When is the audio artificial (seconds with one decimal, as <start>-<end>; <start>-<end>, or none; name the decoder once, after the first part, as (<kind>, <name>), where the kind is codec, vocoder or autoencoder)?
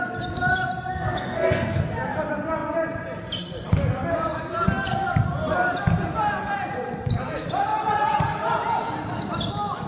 0.9-1.8 (codec, SNAC)